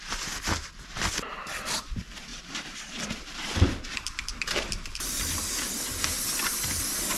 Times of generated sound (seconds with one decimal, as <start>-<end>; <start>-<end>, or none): 1.3-1.8; 2.3-5.3